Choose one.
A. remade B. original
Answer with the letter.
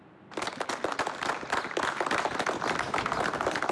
B